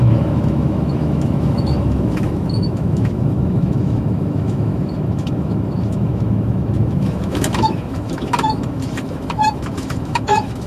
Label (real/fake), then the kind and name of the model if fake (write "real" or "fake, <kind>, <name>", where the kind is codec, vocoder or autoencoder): fake, autoencoder, DAC-VAE